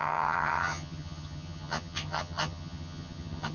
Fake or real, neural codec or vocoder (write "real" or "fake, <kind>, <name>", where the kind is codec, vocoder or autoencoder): fake, vocoder, HiFi-GAN